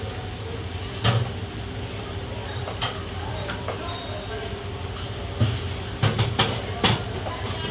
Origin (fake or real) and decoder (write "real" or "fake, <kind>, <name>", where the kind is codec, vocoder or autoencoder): real